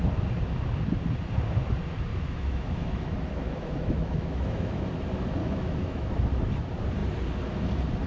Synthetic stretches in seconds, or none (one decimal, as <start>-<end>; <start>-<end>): 2.1-4.9; 5.4-6.1